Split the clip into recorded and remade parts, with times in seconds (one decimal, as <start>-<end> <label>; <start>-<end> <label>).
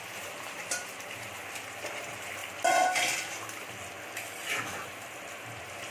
0.0-0.6 remade; 0.6-1.6 recorded; 1.6-2.4 remade; 2.4-5.4 recorded; 5.4-5.9 remade